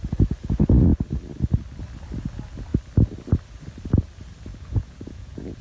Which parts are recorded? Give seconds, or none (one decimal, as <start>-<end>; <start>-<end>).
0.0-4.5